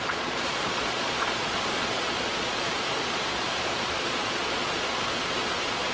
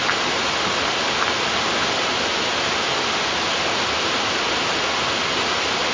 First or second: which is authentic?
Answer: second